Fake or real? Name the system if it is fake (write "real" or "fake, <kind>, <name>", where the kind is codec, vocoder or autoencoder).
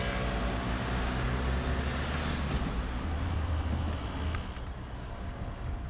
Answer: real